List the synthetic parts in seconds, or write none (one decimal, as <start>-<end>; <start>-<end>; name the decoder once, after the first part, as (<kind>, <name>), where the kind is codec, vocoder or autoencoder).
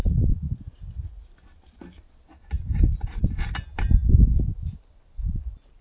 none